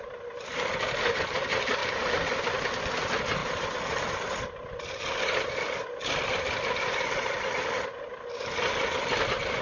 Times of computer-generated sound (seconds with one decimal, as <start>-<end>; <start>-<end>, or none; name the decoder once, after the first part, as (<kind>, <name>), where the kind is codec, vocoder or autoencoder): none